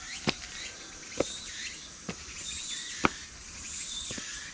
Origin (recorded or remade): recorded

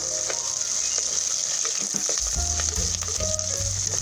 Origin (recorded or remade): recorded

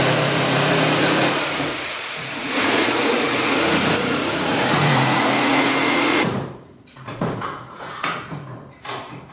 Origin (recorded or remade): remade